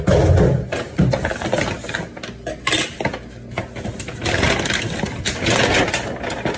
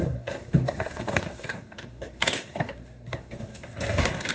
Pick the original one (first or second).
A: first